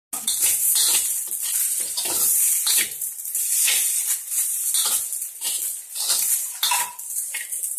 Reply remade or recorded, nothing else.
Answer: recorded